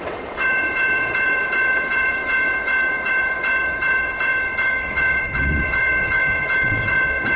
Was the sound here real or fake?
fake